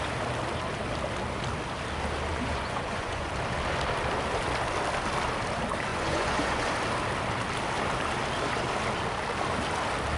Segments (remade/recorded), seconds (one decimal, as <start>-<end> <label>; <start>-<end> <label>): 0.0-2.3 recorded; 2.3-3.3 remade; 3.3-5.9 recorded; 5.9-6.7 remade; 6.7-10.2 recorded